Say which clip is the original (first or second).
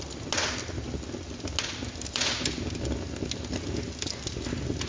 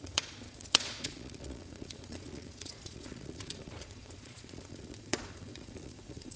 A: first